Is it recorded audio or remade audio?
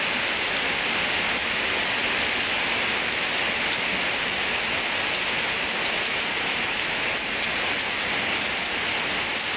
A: recorded